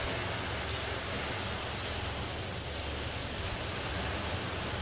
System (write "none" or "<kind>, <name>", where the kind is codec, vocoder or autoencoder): none